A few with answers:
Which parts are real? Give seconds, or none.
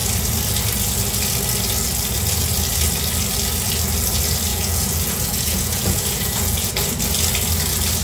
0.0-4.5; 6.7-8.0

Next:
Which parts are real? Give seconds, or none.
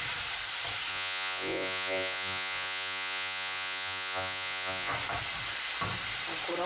0.0-0.9; 4.9-6.7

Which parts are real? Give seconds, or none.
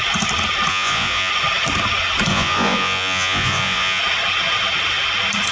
0.0-0.7; 1.3-2.3; 4.0-5.5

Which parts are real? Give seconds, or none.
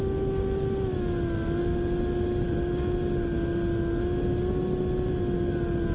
0.0-5.9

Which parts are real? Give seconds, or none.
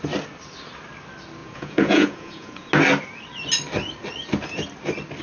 0.0-1.4; 2.7-5.2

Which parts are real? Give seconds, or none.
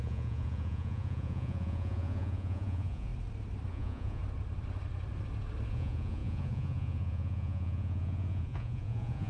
3.1-3.7; 4.2-5.7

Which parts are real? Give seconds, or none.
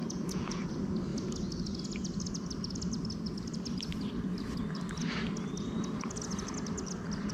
0.7-7.3